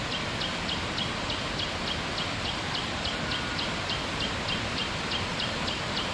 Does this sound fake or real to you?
fake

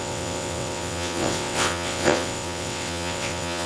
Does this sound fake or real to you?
fake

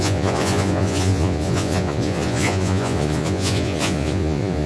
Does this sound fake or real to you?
fake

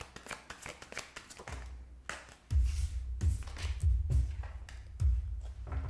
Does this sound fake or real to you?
real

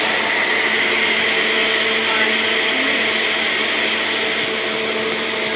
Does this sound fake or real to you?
real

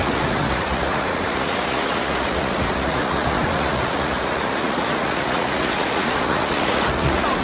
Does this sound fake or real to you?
fake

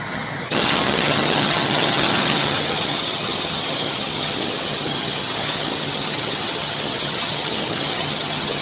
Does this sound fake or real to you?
fake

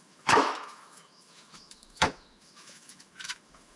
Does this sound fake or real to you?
fake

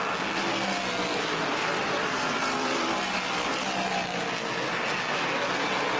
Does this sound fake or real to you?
real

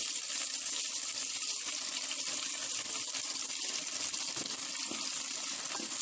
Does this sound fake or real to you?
real